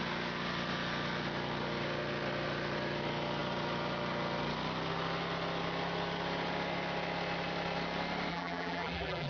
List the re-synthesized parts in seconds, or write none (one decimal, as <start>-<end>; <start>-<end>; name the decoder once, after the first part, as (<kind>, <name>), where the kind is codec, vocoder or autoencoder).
8.3-9.3 (vocoder, BigVGAN v2)